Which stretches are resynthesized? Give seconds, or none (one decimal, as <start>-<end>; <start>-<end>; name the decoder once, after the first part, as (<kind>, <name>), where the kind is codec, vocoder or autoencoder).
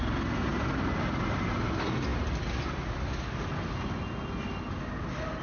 none